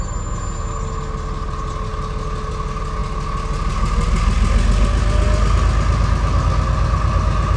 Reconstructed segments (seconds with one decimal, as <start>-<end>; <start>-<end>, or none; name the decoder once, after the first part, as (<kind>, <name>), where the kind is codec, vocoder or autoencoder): none